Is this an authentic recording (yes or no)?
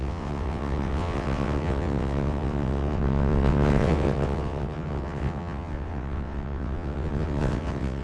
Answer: no